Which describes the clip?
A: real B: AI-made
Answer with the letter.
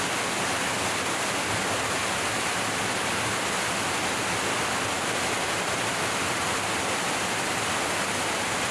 A